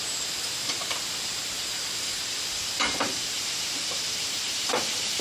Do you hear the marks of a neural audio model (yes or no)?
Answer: yes